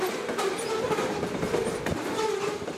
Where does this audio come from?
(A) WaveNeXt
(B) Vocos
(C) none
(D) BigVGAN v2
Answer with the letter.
D